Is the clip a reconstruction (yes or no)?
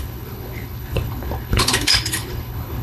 yes